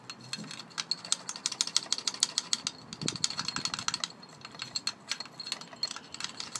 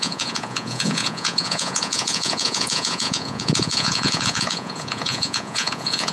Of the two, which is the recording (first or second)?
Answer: first